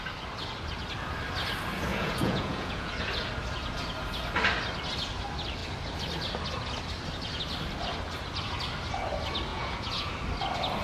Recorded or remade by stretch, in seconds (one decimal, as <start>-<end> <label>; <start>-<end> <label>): 0.0-1.9 recorded; 1.9-3.1 remade; 3.1-9.5 recorded; 9.5-10.1 remade; 10.1-10.8 recorded